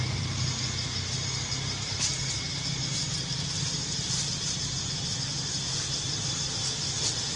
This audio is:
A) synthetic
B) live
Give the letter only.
B